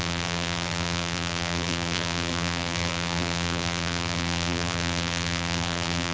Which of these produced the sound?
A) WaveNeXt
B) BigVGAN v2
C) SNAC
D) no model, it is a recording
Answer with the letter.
B